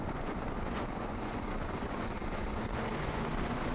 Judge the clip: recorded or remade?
remade